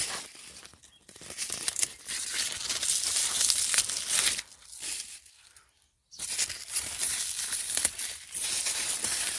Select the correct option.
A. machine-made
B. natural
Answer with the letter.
B